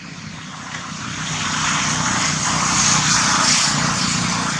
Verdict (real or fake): real